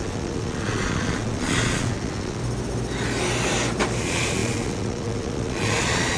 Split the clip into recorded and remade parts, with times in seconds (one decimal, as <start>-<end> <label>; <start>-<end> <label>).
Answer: 0.0-2.4 remade; 2.4-4.0 recorded; 4.0-6.2 remade